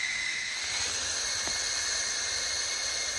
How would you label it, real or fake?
real